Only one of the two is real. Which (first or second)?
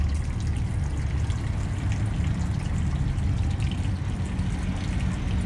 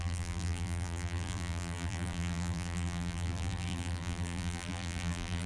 first